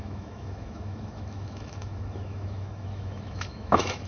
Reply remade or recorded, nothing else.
remade